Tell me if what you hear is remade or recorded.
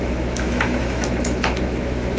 remade